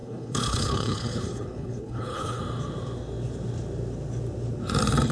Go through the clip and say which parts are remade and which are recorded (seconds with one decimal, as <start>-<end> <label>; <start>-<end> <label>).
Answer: 0.0-2.4 remade; 2.4-5.1 recorded